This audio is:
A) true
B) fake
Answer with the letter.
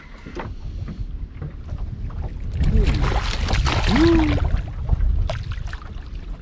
A